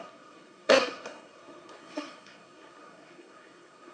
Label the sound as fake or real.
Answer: fake